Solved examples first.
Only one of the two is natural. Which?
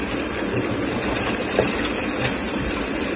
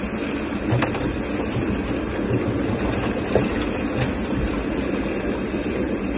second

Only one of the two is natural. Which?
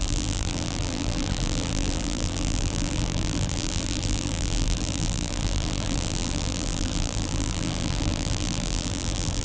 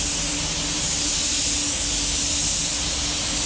second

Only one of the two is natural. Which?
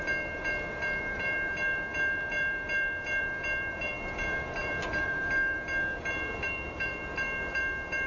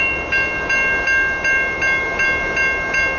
second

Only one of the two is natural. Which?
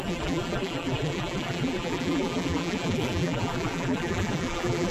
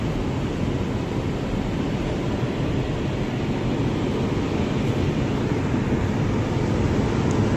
second